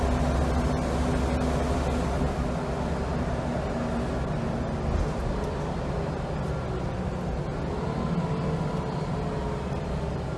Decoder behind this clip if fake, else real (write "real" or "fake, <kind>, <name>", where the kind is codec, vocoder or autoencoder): real